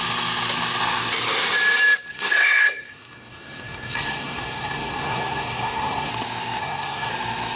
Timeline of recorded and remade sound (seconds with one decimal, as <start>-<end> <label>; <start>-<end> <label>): 0.0-2.1 recorded; 2.1-6.1 remade; 6.1-6.6 recorded; 6.6-7.1 remade; 7.1-7.6 recorded